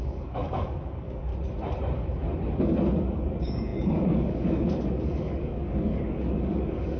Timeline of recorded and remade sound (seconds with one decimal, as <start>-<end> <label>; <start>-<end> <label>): 0.0-1.3 remade; 1.3-2.6 recorded; 2.6-7.0 remade